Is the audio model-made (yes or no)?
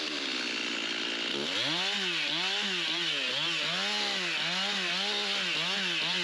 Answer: no